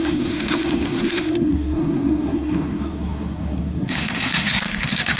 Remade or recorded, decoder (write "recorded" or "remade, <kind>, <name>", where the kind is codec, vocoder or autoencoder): remade, codec, SNAC